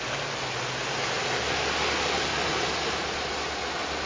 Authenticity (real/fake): real